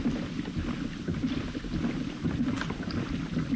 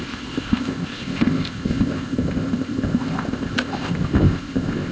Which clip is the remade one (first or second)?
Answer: second